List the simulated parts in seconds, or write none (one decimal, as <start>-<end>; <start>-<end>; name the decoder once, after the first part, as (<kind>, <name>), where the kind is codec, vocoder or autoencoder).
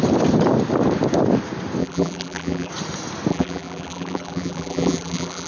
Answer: 1.8-2.7 (vocoder, BigVGAN v2); 3.3-5.5